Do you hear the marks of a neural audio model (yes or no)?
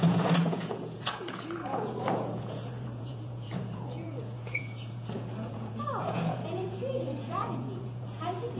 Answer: yes